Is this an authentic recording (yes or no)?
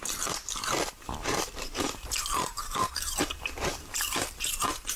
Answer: no